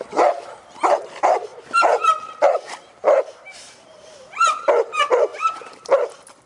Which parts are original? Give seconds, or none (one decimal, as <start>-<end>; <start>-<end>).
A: 0.0-1.5; 2.4-3.5; 4.6-5.3; 6.1-6.5